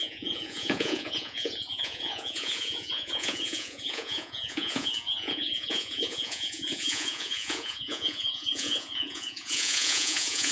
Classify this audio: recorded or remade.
remade